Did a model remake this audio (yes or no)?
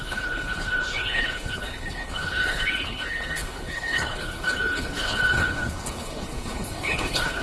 yes